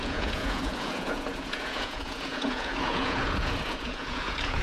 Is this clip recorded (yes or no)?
no